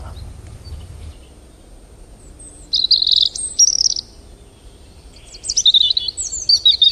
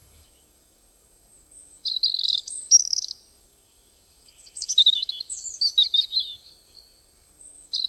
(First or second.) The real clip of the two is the first